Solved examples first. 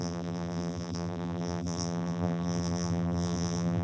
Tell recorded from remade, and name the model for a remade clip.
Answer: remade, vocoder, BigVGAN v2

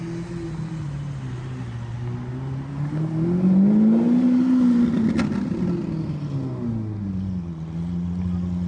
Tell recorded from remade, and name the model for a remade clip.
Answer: recorded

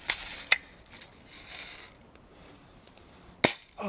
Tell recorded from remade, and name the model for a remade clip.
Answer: recorded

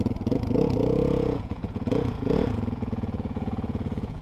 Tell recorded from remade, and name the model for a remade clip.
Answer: remade, vocoder, Vocos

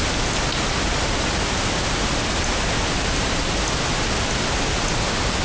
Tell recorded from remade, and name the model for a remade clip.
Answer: recorded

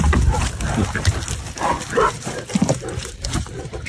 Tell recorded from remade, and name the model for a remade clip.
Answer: recorded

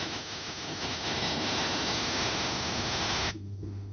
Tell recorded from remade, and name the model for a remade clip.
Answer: remade, autoencoder, DAC-VAE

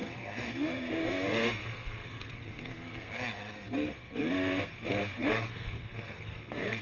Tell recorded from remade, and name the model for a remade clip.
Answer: remade, codec, SNAC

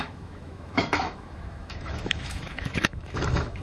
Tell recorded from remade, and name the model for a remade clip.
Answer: remade, autoencoder, DAC-VAE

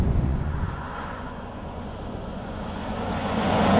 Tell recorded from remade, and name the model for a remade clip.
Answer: remade, vocoder, Vocos